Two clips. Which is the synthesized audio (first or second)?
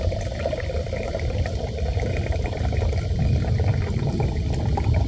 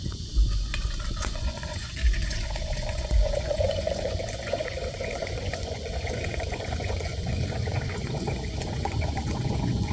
second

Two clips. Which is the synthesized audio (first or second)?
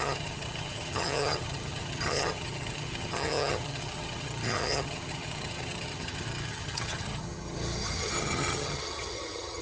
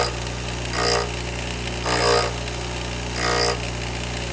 first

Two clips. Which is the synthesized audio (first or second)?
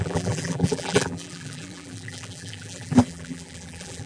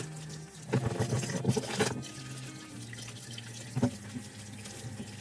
first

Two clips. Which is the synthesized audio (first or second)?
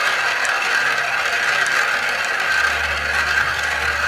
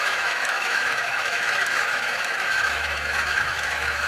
second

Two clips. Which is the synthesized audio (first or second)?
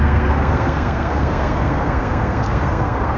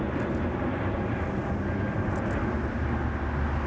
first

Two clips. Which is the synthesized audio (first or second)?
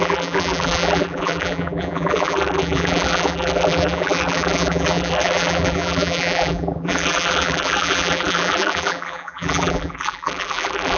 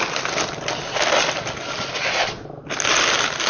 first